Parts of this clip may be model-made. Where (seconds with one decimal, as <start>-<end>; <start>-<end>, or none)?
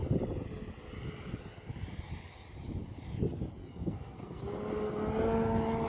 3.6-4.4